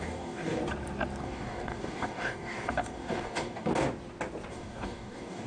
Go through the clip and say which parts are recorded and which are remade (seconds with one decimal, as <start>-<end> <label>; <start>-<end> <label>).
0.0-0.6 remade; 0.6-1.2 recorded; 1.2-3.7 remade; 3.7-4.5 recorded; 4.5-5.5 remade